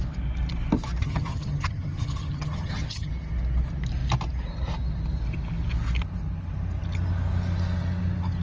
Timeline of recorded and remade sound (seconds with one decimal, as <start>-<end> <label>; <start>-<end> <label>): 0.0-1.0 recorded; 1.0-3.1 remade; 3.1-8.4 recorded